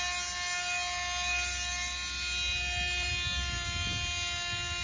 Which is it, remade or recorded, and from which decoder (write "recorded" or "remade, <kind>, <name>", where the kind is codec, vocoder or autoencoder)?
recorded